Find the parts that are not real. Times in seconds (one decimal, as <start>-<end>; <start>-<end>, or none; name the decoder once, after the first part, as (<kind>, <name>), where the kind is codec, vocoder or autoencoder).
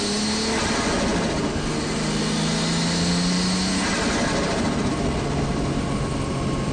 none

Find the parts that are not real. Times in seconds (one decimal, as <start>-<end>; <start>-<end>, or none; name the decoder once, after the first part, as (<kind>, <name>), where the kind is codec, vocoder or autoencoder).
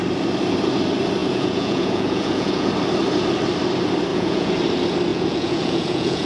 1.2-2.7 (vocoder, Vocos); 4.1-4.6; 5.1-6.3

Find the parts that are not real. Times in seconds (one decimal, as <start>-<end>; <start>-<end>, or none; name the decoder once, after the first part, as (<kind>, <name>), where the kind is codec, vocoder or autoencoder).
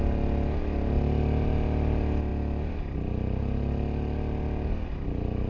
none